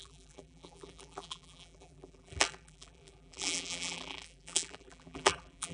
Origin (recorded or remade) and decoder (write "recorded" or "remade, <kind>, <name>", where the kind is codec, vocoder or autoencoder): remade, vocoder, BigVGAN v2